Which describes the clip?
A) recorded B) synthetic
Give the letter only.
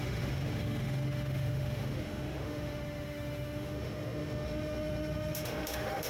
B